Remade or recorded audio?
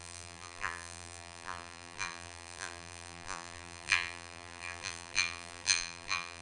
remade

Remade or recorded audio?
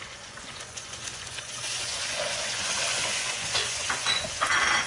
remade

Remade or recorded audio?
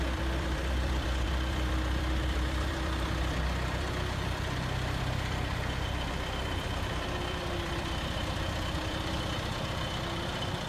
remade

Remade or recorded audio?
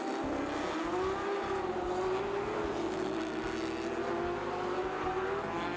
recorded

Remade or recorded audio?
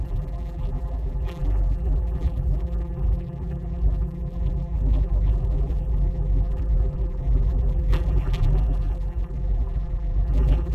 remade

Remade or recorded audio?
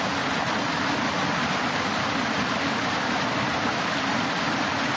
recorded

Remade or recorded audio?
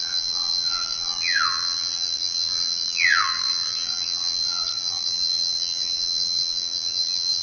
remade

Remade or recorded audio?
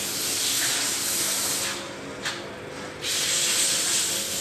recorded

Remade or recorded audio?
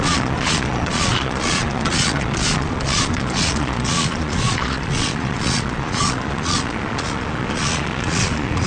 remade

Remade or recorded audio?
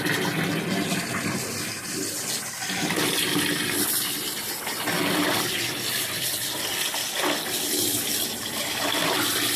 recorded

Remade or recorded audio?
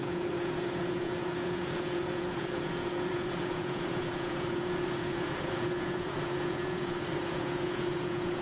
remade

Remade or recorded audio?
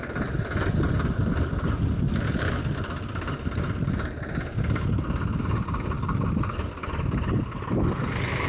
recorded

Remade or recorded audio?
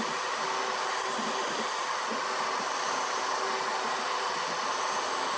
recorded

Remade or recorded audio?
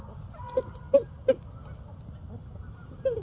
recorded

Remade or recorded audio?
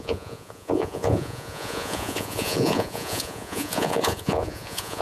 remade